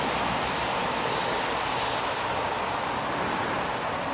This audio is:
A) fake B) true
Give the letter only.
B